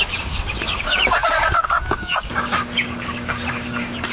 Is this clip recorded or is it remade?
remade